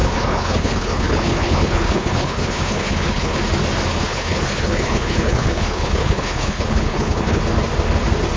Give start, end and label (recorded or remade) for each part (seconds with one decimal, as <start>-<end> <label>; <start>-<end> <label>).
0.0-3.4 remade; 3.4-3.9 recorded; 3.9-7.4 remade; 7.4-8.4 recorded